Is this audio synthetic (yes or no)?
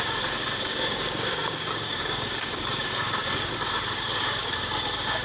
yes